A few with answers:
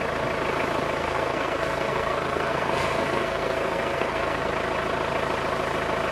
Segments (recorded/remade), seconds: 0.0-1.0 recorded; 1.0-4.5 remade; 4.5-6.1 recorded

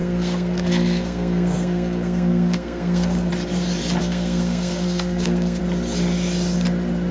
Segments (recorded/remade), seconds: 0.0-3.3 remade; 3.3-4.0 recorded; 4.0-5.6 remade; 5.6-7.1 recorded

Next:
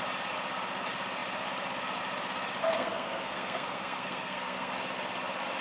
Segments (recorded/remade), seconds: 0.0-2.6 recorded; 2.6-4.7 remade; 4.7-5.6 recorded